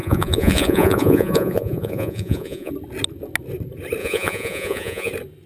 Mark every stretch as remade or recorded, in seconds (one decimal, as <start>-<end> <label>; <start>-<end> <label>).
0.0-2.7 remade; 2.7-4.0 recorded; 4.0-5.1 remade; 5.1-5.5 recorded